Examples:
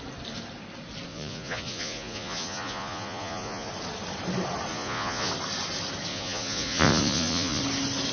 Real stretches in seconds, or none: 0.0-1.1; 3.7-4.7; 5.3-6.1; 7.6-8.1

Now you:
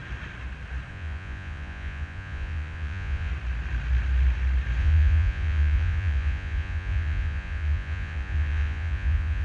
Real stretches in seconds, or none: 0.0-0.9; 3.3-4.8

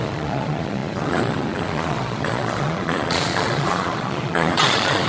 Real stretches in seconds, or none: none

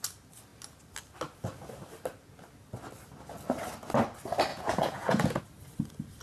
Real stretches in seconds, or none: 0.0-4.5; 5.4-6.2

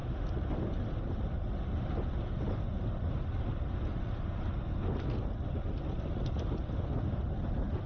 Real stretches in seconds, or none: 0.0-7.9

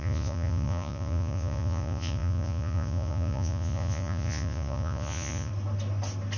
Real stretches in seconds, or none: 5.5-6.4

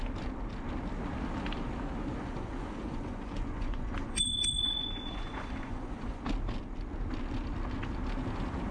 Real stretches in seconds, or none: 0.0-2.2; 6.2-8.7

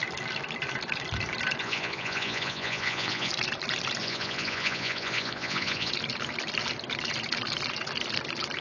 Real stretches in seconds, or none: 0.0-1.6; 3.3-4.0; 5.9-8.6